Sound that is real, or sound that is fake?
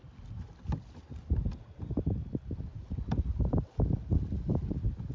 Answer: real